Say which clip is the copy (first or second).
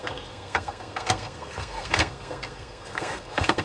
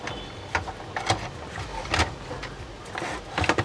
first